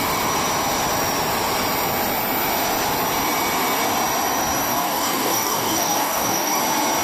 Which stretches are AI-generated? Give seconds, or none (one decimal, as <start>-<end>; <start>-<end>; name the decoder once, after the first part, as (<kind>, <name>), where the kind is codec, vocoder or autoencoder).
4.7-6.6 (codec, DAC)